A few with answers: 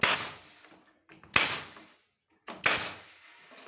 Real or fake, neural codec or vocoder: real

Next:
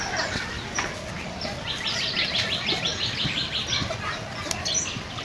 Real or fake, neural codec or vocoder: real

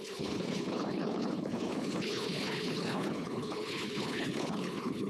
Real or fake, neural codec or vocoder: fake, codec, HILCodec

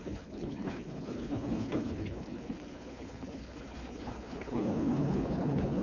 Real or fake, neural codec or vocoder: fake, codec, HILCodec